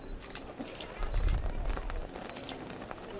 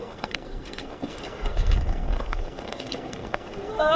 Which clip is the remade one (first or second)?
second